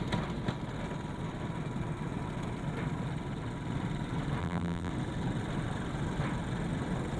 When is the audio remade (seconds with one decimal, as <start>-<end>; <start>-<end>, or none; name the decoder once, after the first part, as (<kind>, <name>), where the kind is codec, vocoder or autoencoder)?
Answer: 4.4-4.9 (vocoder, BigVGAN v2)